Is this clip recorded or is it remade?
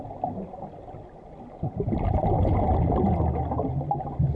recorded